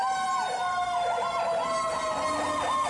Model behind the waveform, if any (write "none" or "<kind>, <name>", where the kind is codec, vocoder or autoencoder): none